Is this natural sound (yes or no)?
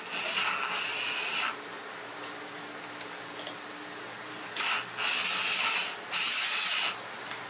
yes